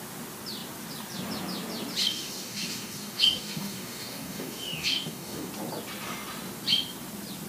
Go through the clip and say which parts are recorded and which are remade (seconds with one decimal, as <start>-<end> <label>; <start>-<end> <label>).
0.0-2.0 recorded; 2.0-5.5 remade; 5.5-7.5 recorded

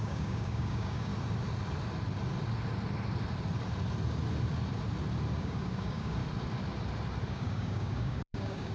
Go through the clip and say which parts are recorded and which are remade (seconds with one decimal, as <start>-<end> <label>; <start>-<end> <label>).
0.0-1.1 remade; 1.1-5.4 recorded; 5.4-6.2 remade; 6.2-7.3 recorded; 7.3-8.7 remade